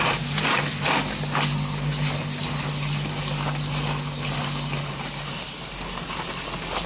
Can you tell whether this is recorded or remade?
recorded